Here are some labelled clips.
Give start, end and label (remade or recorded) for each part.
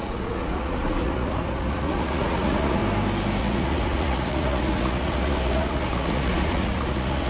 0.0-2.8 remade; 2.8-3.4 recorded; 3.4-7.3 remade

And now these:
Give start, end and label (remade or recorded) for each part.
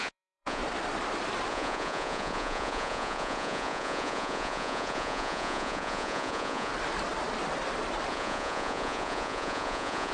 0.0-0.6 remade; 0.6-1.5 recorded; 1.5-6.7 remade; 6.7-8.1 recorded; 8.1-10.1 remade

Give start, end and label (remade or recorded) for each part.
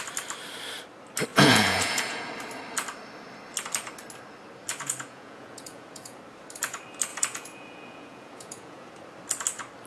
0.0-1.3 recorded; 1.3-2.3 remade; 2.3-4.7 recorded; 4.7-6.2 remade; 6.2-7.1 recorded; 7.1-8.9 remade; 8.9-9.9 recorded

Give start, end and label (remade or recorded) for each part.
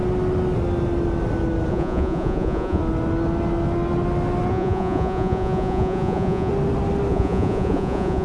0.0-1.7 recorded; 1.7-2.8 remade; 2.8-4.5 recorded; 4.5-6.5 remade; 6.5-7.1 recorded; 7.1-8.2 remade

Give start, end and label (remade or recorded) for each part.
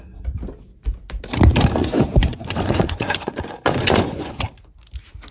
0.0-1.8 recorded; 1.8-4.4 remade; 4.4-5.3 recorded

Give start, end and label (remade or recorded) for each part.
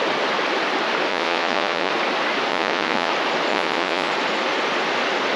0.0-1.1 recorded; 1.1-1.9 remade; 1.9-2.5 recorded; 2.5-3.1 remade; 3.1-3.5 recorded; 3.5-4.1 remade; 4.1-5.4 recorded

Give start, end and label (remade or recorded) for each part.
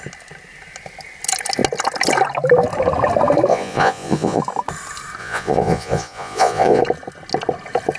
0.0-3.5 recorded; 3.5-4.4 remade; 4.4-5.2 recorded; 5.2-6.8 remade; 6.8-8.0 recorded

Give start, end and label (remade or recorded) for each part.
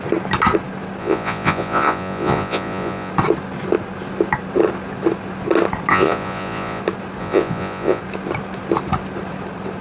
0.0-1.0 recorded; 1.0-3.1 remade; 3.1-5.9 recorded; 5.9-6.8 remade; 6.8-7.2 recorded; 7.2-8.0 remade; 8.0-9.8 recorded